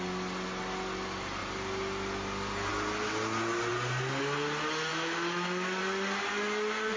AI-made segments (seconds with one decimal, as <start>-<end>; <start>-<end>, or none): 4.9-5.8